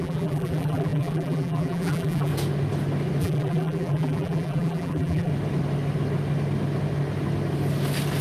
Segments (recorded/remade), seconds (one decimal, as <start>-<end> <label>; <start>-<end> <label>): 0.0-2.3 remade; 2.3-3.2 recorded; 3.2-5.3 remade; 5.3-8.2 recorded